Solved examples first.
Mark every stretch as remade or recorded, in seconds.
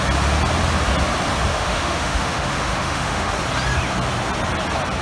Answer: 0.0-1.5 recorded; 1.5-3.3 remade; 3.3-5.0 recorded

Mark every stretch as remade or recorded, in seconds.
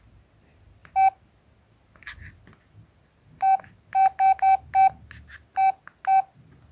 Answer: 0.0-6.7 recorded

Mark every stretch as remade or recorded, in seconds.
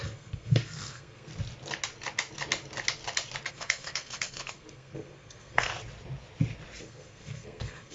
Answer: 0.0-1.3 remade; 1.3-3.5 recorded; 3.5-5.7 remade; 5.7-6.8 recorded; 6.8-7.9 remade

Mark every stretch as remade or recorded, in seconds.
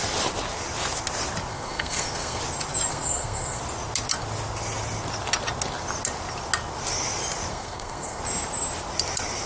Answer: 0.0-1.5 recorded; 1.5-2.4 remade; 2.4-2.9 recorded; 2.9-3.6 remade; 3.6-7.5 recorded; 7.5-8.2 remade; 8.2-9.5 recorded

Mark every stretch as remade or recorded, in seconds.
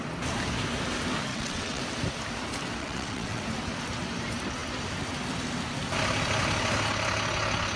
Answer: 0.0-1.3 recorded; 1.3-1.8 remade; 1.8-2.8 recorded; 2.8-3.4 remade; 3.4-7.8 recorded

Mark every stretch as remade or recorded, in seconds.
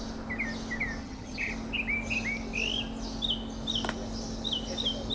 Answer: 0.0-1.0 recorded; 1.0-1.5 remade; 1.5-5.1 recorded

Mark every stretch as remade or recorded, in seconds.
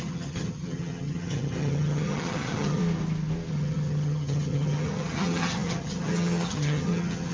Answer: 0.0-2.8 remade; 2.8-3.5 recorded; 3.5-7.3 remade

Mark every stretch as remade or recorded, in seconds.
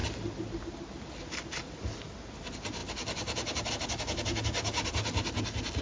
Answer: 0.0-5.8 recorded